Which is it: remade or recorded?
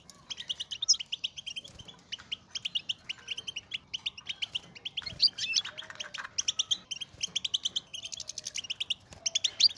recorded